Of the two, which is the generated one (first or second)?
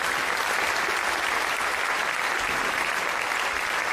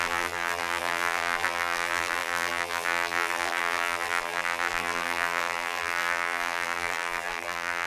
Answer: second